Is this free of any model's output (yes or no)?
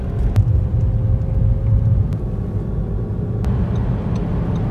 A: yes